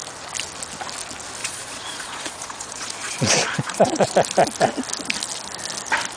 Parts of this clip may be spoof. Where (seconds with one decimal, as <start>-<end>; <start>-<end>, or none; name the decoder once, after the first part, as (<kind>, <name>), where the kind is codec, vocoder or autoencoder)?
1.4-4.1 (vocoder, Vocos)